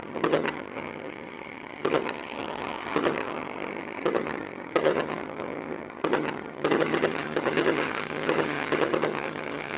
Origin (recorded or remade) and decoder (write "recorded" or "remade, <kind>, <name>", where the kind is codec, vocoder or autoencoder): remade, vocoder, HiFi-GAN